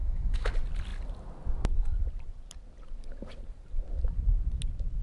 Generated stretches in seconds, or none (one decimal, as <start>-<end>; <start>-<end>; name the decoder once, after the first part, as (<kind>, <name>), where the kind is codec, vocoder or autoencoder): 0.0-0.5 (autoencoder, DAC-VAE)